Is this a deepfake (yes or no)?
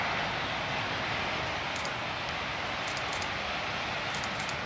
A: no